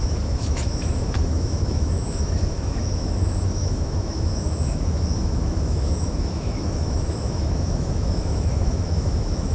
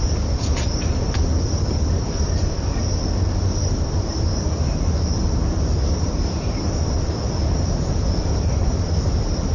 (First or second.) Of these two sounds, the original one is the second